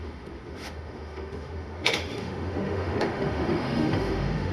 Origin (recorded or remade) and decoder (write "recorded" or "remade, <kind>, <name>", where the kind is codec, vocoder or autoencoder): remade, autoencoder, DAC-VAE